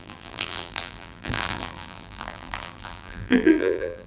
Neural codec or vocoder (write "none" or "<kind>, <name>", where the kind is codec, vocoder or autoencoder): vocoder, BigVGAN v2